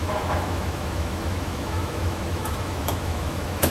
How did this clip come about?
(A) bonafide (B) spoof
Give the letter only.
B